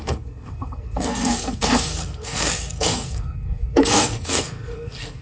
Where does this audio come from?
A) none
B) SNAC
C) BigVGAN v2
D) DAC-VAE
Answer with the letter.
B